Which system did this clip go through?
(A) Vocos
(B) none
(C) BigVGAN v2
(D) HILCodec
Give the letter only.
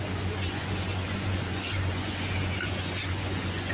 A